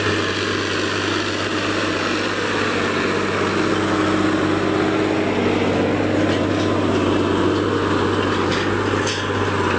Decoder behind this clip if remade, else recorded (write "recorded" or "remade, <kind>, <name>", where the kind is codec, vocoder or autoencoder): recorded